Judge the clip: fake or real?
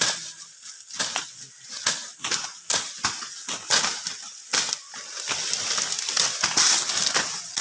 real